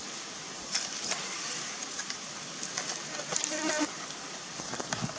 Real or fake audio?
fake